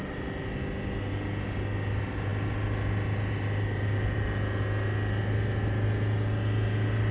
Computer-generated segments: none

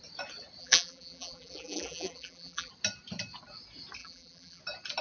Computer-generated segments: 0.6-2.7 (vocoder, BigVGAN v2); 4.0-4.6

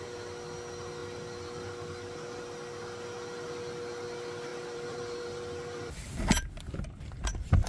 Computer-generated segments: 4.5-7.7 (vocoder, BigVGAN v2)

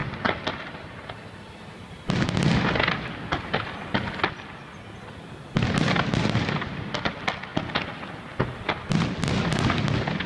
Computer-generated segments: none